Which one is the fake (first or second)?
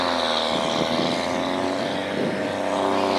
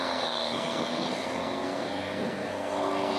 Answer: second